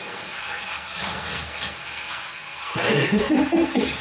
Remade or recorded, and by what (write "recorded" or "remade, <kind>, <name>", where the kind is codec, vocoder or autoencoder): remade, codec, SNAC